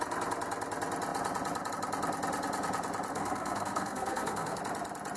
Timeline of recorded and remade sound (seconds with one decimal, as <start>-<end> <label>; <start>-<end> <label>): 0.0-3.1 recorded; 3.1-4.6 remade; 4.6-5.2 recorded